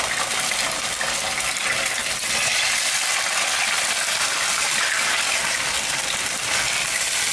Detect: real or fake real